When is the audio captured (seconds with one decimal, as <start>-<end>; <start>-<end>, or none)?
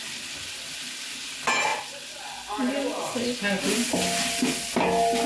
0.0-5.3